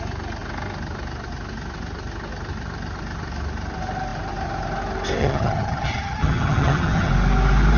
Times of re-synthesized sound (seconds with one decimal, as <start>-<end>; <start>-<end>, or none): 5.2-7.1